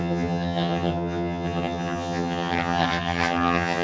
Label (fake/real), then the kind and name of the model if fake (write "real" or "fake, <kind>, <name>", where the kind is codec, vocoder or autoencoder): fake, vocoder, HiFi-GAN